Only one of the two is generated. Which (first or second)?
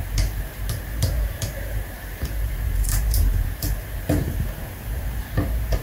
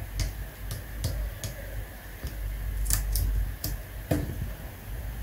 first